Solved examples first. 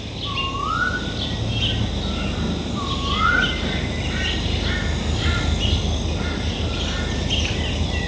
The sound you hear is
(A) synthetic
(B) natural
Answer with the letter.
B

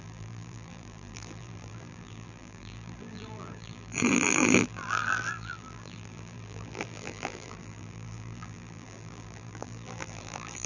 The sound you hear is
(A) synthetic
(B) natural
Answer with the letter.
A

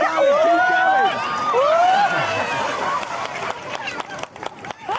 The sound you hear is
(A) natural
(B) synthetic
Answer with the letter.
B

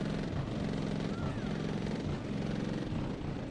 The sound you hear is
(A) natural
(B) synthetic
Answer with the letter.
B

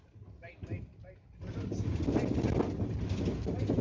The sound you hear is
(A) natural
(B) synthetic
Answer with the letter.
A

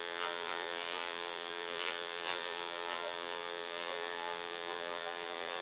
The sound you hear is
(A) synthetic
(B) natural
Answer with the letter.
A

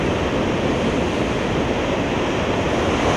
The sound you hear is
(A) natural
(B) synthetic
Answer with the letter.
A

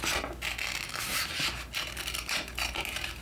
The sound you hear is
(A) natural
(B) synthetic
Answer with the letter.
A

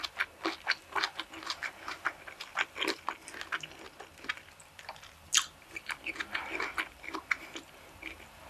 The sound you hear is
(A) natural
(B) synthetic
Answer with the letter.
A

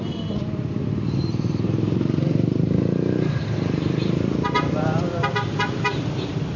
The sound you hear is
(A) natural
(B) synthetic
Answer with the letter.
B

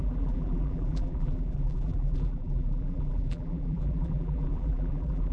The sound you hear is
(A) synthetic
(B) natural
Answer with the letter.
A